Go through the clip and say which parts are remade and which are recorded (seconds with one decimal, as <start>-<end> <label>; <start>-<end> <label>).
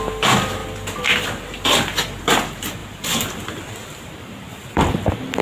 0.0-2.8 recorded; 2.8-4.9 remade; 4.9-5.4 recorded